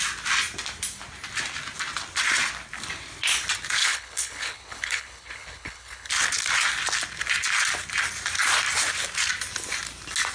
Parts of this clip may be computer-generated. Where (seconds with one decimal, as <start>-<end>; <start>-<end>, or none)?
3.8-6.1